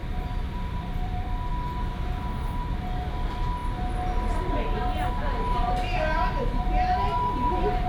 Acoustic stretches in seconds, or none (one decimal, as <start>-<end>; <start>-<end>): 1.5-7.9